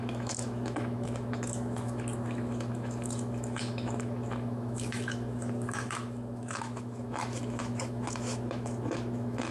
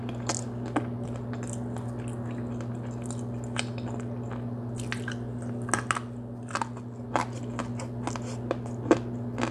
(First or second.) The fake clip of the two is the first